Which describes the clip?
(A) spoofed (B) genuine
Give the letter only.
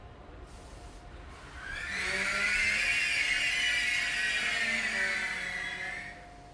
B